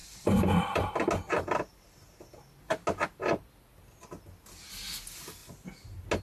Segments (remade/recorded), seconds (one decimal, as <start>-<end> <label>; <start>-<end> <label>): 0.0-0.9 remade; 0.9-6.2 recorded